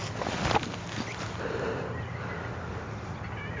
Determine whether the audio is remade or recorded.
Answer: recorded